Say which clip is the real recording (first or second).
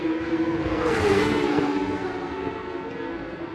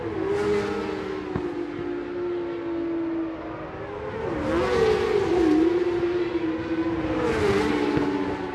second